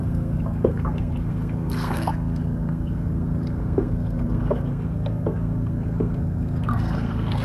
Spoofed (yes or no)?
yes